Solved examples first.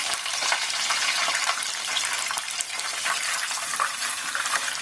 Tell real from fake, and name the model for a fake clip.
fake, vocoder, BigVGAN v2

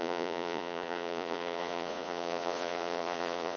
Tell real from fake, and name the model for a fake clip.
fake, vocoder, Vocos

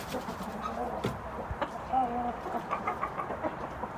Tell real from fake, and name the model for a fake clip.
real